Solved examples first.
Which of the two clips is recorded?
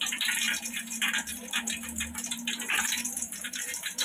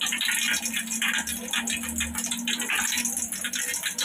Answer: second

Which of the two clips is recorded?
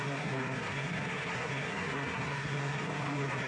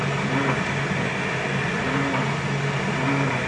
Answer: second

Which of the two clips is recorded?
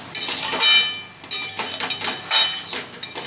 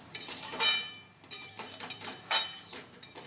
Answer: first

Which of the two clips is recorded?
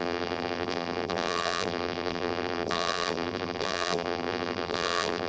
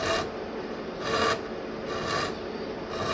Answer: second